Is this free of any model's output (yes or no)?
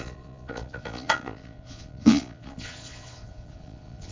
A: no